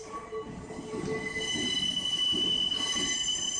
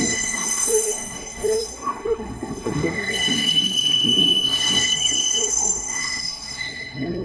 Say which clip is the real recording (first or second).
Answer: first